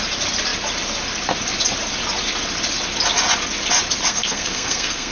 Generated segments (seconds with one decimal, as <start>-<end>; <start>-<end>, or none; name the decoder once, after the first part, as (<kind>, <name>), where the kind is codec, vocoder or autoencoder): 4.1-5.1 (codec, SNAC)